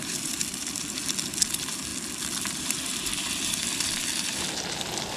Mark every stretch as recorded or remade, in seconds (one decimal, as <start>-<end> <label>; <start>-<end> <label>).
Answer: 0.0-1.9 remade; 1.9-2.4 recorded; 2.4-5.2 remade